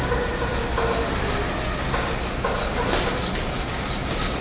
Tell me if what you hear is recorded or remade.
recorded